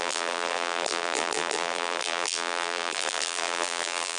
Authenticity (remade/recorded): remade